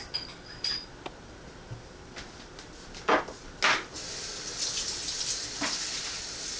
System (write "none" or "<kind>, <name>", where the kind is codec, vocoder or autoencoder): none